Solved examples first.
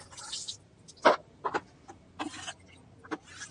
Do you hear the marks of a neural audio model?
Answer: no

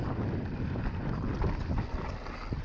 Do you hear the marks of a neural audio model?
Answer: no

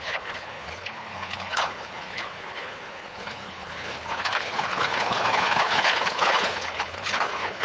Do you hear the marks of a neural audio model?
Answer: yes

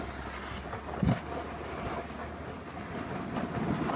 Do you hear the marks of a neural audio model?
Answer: no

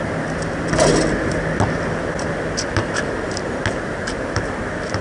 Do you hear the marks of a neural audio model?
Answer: no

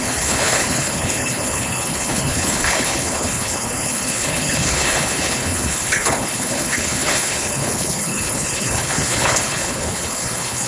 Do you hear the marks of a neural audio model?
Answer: yes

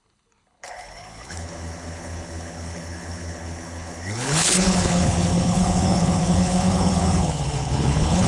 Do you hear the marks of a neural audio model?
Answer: yes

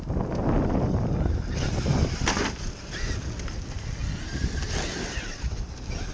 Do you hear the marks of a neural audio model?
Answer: no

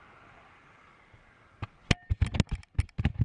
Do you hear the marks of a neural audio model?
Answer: no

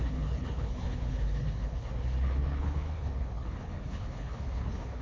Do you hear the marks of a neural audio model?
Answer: yes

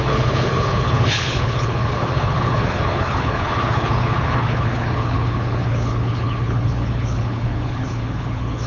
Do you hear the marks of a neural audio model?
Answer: yes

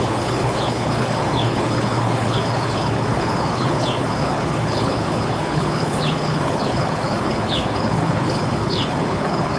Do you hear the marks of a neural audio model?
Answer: yes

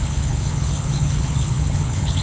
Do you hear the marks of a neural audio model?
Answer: yes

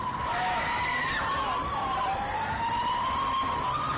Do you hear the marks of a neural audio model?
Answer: no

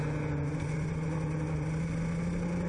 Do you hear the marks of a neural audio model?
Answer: no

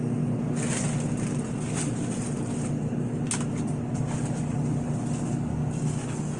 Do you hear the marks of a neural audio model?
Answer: no